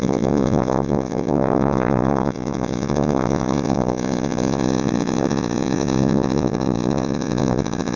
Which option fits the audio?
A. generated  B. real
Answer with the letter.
A